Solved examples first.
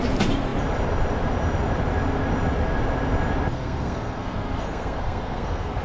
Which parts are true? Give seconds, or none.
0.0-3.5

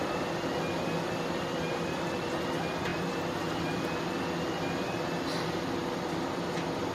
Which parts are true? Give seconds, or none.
0.0-6.9

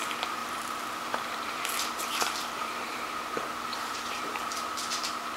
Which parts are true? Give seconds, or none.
0.0-0.4; 3.0-3.7; 4.5-5.4

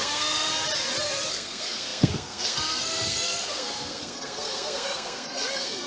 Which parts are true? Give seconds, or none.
0.5-1.3

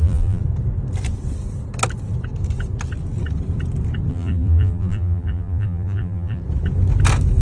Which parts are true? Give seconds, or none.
0.4-4.1; 6.4-7.4

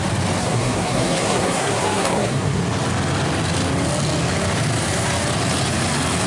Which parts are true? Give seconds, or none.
0.0-0.4; 2.6-6.3

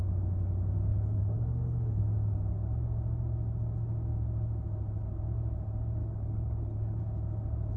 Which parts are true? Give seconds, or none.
0.0-0.9; 2.0-6.0; 7.0-7.8